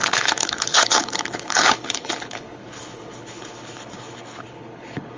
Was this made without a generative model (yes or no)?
no